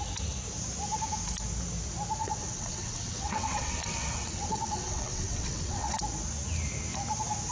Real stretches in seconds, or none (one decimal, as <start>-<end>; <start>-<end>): 0.0-2.2; 6.0-7.5